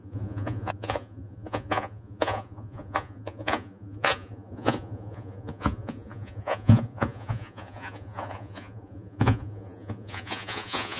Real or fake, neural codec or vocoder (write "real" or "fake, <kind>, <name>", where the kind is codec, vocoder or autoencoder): fake, vocoder, Vocos